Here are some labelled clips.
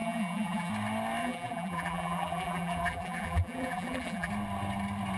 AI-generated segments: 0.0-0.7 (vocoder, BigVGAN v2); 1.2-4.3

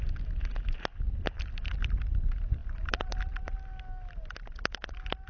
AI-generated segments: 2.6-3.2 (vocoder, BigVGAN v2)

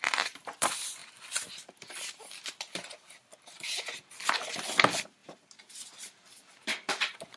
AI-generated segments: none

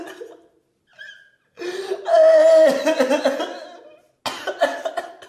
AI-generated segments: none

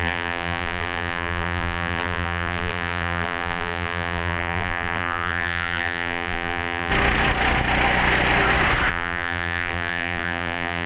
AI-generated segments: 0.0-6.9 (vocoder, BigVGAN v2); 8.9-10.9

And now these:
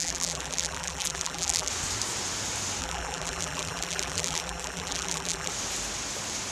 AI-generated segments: 0.0-1.7 (vocoder, BigVGAN v2); 2.8-5.5